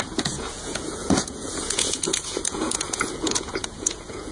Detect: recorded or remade remade